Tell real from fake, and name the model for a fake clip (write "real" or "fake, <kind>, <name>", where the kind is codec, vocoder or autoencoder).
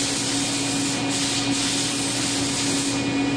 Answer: real